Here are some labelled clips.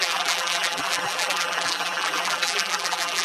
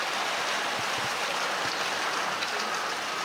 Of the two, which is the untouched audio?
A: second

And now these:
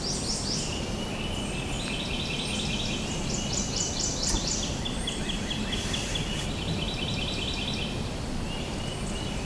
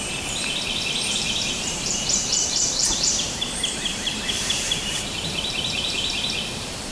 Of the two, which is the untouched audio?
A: first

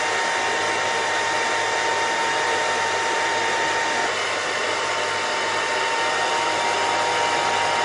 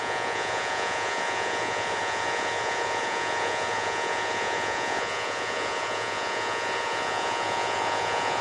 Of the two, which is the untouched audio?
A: first